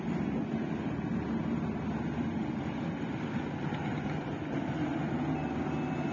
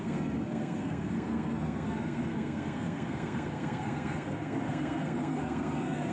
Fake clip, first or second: second